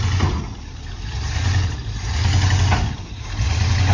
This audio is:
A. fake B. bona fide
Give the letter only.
B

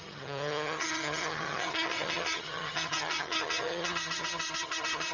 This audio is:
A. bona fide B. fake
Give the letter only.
B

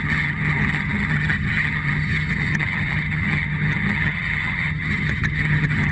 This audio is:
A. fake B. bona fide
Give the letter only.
A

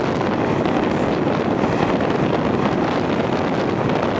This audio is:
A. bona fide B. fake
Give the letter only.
A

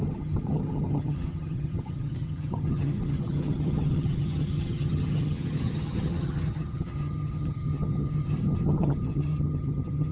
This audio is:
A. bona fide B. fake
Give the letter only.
B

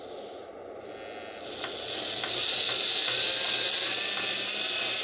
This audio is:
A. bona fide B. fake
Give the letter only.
A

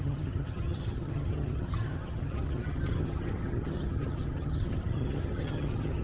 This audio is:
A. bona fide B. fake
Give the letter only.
B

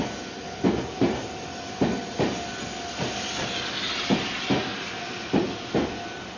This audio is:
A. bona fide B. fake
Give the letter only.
A